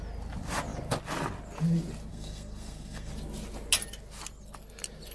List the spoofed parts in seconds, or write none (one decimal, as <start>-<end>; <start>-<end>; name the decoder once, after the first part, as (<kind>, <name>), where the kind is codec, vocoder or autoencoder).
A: 2.1-3.1 (codec, SNAC)